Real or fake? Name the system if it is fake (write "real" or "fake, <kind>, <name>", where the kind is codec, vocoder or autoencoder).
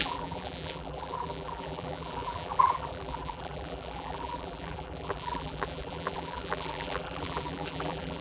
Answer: fake, vocoder, BigVGAN v2